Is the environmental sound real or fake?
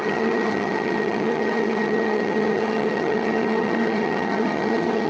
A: fake